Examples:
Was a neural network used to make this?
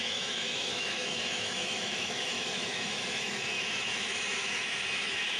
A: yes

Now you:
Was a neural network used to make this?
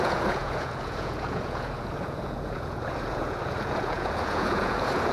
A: yes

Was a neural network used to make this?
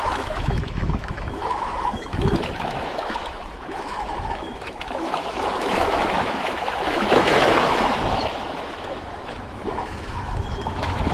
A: yes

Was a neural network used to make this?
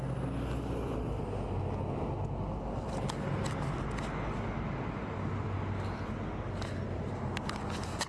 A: no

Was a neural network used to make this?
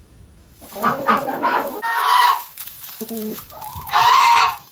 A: yes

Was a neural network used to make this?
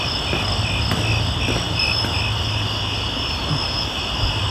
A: no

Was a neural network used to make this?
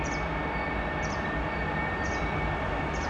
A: yes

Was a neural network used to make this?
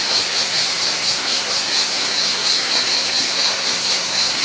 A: yes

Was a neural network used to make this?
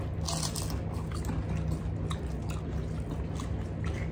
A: no